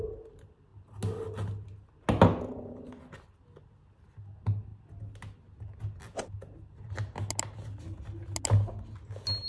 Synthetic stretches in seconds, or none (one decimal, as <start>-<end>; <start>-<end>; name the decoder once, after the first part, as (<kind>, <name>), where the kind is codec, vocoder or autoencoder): none